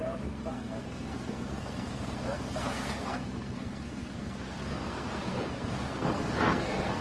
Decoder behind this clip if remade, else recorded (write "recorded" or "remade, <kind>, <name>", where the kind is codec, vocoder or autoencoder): remade, codec, SNAC